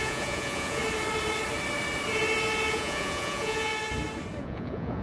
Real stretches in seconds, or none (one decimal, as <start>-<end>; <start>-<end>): 0.8-2.7; 3.7-4.4